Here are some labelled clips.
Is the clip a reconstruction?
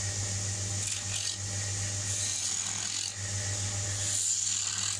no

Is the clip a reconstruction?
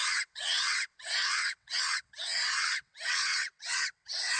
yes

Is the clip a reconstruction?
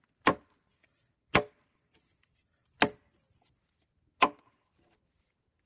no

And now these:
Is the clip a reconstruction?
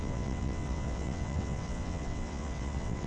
yes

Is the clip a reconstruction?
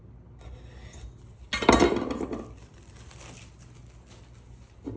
no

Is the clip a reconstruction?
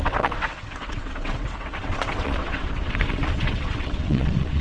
yes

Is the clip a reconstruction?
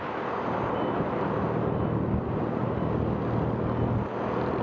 no